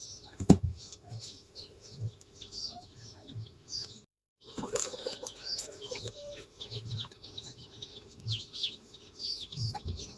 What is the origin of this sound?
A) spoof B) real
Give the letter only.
A